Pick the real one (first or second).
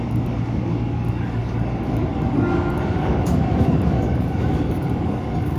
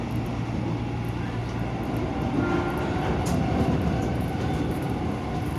second